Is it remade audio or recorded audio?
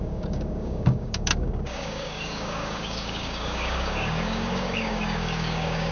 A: remade